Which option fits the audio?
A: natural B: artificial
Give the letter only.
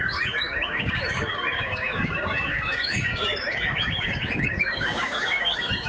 B